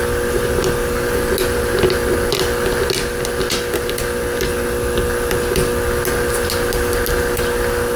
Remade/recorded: recorded